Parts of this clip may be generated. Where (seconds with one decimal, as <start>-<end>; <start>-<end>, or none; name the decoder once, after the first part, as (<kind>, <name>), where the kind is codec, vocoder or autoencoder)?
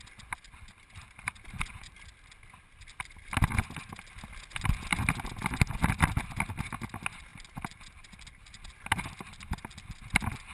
none